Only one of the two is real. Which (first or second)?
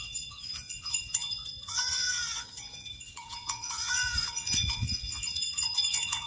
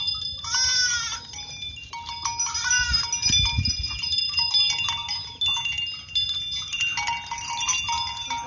second